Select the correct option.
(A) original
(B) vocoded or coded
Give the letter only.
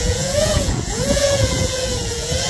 B